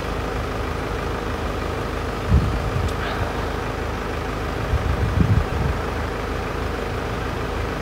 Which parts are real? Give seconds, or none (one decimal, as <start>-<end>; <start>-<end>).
0.0-4.7